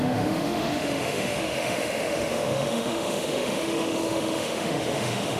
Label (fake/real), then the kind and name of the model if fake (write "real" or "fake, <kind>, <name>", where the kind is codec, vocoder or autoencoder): fake, autoencoder, DAC-VAE